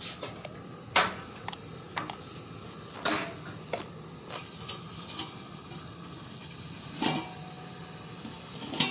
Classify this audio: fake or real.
real